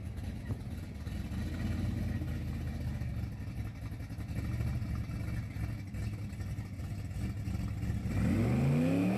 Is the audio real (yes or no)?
yes